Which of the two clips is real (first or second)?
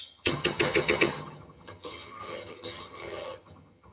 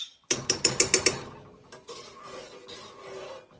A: second